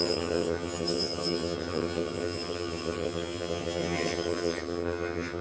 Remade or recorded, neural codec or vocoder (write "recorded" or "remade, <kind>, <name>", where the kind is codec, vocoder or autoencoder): remade, vocoder, HiFi-GAN